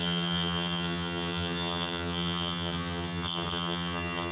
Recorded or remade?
remade